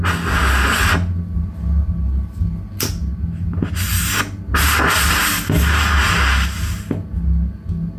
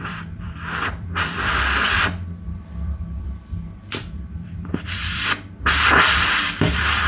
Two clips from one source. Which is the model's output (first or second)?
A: second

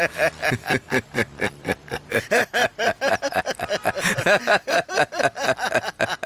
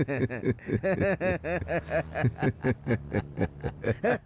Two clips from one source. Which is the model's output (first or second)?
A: first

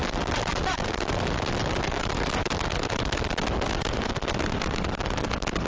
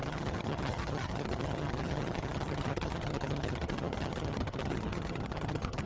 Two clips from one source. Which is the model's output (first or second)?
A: second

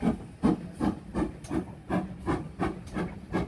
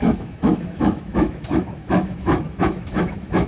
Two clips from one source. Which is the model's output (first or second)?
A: second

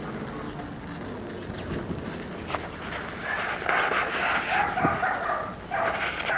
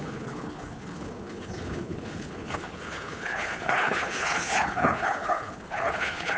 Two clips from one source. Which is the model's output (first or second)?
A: second